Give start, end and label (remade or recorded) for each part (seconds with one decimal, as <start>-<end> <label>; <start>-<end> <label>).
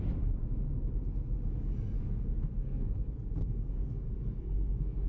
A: 0.0-2.0 recorded; 2.0-3.0 remade; 3.0-3.4 recorded; 3.4-5.1 remade